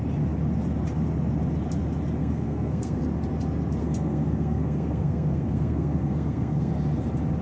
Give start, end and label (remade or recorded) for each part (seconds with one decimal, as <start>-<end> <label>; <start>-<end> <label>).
0.0-2.2 recorded; 2.2-3.0 remade; 3.0-3.8 recorded; 3.8-6.7 remade; 6.7-7.4 recorded